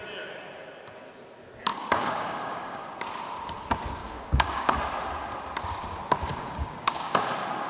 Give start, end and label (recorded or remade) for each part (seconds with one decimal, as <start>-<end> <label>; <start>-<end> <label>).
0.0-1.7 recorded; 1.7-2.8 remade; 2.8-4.0 recorded; 4.0-4.8 remade; 4.8-6.3 recorded; 6.3-7.3 remade; 7.3-7.7 recorded